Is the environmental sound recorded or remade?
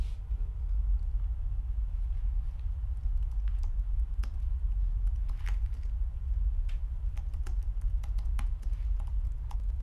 recorded